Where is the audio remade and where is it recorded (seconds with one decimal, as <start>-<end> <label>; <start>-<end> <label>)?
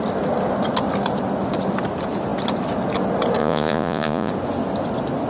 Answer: 0.0-3.4 recorded; 3.4-4.3 remade; 4.3-5.3 recorded